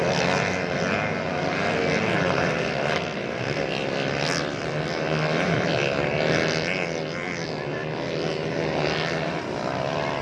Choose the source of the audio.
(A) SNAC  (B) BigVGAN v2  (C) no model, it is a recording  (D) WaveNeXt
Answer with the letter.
C